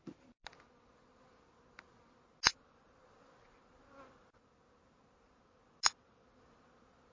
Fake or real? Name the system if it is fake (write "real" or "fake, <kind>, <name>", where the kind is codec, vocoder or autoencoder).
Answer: real